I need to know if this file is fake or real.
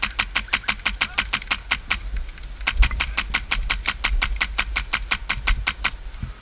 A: real